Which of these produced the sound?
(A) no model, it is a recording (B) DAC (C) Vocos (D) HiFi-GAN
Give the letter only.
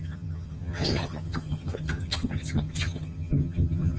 D